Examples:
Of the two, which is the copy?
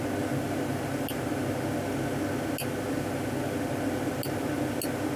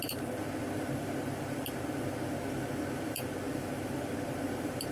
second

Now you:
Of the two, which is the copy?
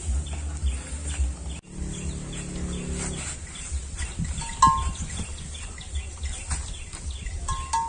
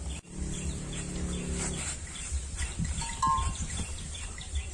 second